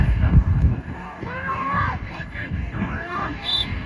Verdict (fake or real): fake